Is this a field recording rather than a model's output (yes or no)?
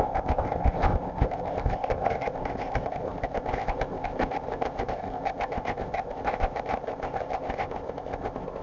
no